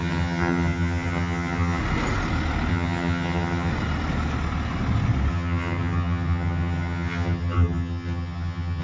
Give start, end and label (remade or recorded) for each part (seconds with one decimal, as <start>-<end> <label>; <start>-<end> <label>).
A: 0.0-1.8 remade; 1.8-2.7 recorded; 2.7-3.7 remade; 3.7-5.3 recorded; 5.3-8.8 remade